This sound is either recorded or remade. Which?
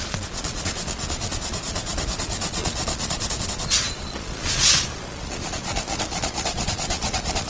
remade